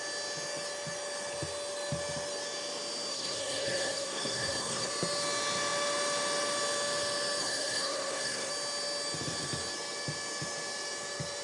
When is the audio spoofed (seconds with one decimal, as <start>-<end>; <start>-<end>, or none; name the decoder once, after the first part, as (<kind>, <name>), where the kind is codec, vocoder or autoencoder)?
3.1-4.9 (codec, SNAC); 7.4-8.5